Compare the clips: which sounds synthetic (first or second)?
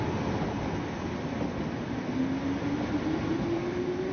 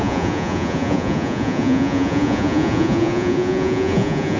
second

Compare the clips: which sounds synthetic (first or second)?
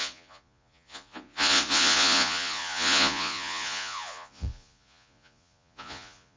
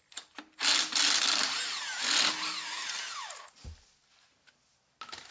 first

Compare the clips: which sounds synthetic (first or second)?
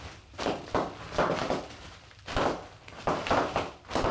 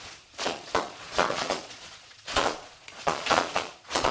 second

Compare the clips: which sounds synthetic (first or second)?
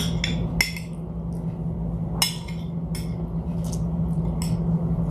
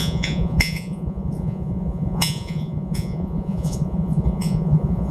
second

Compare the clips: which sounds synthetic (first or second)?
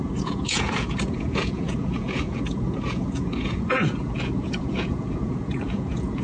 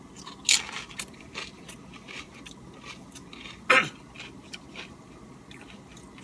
first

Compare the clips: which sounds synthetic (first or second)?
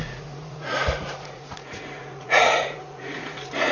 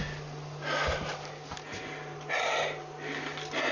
first